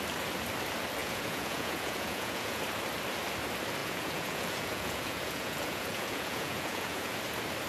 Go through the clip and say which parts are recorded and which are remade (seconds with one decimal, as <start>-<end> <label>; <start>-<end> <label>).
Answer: 0.0-1.0 recorded; 1.0-2.6 remade; 2.6-3.8 recorded; 3.8-7.2 remade; 7.2-7.7 recorded